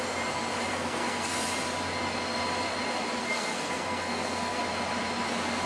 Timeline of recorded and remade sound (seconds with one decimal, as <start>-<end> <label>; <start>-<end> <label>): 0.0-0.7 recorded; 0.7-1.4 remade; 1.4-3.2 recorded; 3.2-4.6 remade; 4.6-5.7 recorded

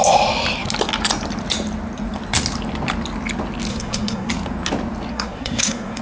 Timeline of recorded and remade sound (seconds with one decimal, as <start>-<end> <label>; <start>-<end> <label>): 0.0-3.7 recorded; 3.7-4.3 remade; 4.3-5.1 recorded; 5.1-6.0 remade

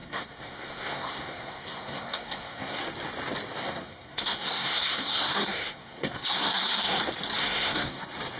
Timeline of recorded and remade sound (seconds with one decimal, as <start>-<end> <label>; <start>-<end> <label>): 0.0-2.8 remade; 2.8-3.6 recorded; 3.6-7.0 remade; 7.0-7.4 recorded; 7.4-8.0 remade; 8.0-8.4 recorded